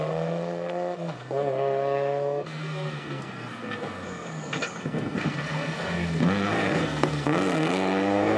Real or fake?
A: fake